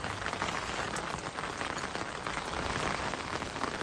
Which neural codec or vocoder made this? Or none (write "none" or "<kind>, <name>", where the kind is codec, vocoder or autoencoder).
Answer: none